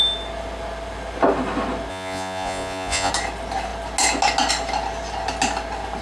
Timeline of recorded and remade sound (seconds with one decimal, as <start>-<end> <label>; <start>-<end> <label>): 0.0-1.9 recorded; 1.9-3.1 remade; 3.1-6.0 recorded